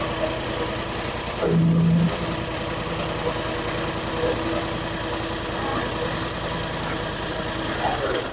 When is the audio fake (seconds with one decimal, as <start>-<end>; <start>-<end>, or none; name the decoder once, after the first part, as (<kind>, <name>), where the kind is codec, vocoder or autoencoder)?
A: none